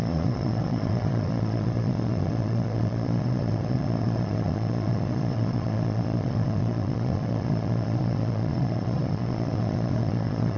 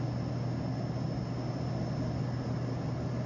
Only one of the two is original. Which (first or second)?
second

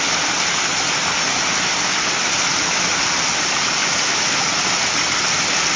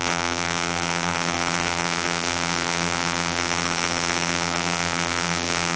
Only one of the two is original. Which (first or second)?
first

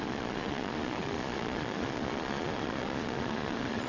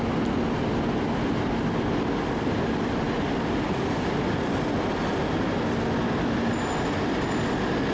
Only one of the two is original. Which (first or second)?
second